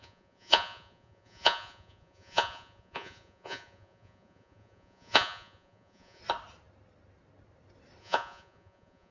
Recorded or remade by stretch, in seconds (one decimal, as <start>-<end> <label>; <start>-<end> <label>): 0.0-6.2 remade; 6.2-8.0 recorded; 8.0-9.1 remade